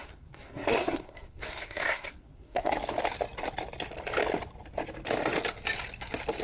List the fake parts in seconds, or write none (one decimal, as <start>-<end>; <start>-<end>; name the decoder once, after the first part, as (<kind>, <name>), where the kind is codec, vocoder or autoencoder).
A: 0.0-2.7 (codec, SNAC)